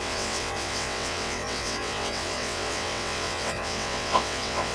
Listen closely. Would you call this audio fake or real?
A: fake